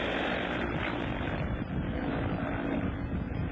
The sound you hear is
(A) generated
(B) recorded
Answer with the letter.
B